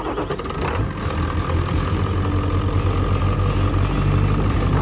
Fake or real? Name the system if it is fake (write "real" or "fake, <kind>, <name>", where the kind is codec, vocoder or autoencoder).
real